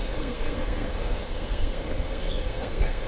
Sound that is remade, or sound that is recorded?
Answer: remade